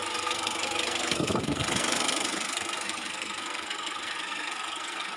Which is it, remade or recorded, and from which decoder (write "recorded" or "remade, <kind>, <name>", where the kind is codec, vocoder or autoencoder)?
remade, codec, SNAC